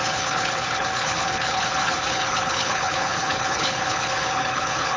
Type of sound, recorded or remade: remade